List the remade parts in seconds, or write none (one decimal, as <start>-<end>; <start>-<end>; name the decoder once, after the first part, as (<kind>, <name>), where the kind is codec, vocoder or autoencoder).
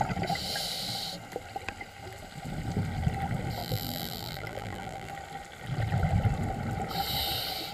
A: 3.6-5.1 (vocoder, BigVGAN v2)